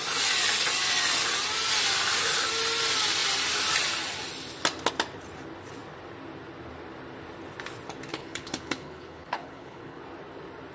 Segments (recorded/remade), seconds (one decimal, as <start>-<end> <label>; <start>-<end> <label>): 0.0-8.1 recorded; 8.1-10.0 remade; 10.0-10.7 recorded